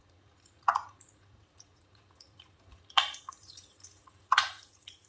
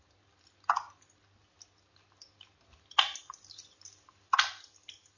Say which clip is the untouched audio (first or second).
second